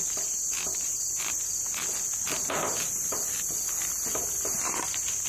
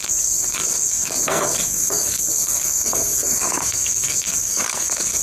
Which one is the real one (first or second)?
first